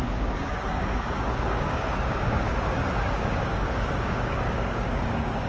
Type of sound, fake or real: fake